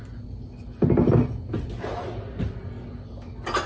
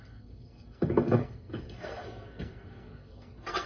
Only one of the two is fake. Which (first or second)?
second